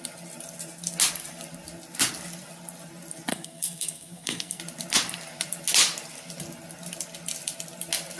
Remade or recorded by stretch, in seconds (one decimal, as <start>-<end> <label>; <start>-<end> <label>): 0.0-3.3 recorded; 3.3-4.6 remade; 4.6-8.2 recorded